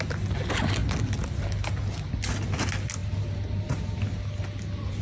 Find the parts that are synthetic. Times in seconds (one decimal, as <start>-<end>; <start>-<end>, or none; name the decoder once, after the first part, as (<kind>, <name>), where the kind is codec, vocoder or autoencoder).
none